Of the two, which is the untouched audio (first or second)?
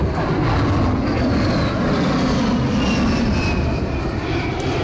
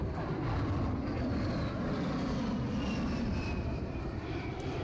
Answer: first